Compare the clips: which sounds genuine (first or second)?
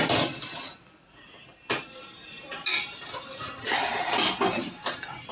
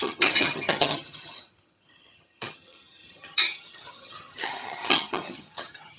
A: first